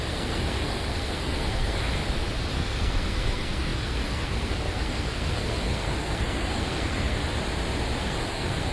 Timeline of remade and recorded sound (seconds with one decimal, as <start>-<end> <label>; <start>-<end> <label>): 0.0-2.0 remade; 2.0-2.5 recorded; 2.5-7.2 remade; 7.2-8.0 recorded; 8.0-8.7 remade